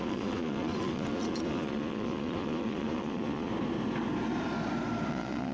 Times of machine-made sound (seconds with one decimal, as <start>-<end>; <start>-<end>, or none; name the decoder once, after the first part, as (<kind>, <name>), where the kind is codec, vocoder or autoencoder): 0.0-3.5 (vocoder, Vocos); 5.1-5.5